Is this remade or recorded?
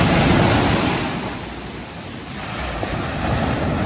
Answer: recorded